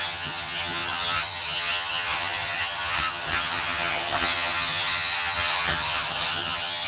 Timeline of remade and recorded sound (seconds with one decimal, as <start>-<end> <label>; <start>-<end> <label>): 0.0-6.9 remade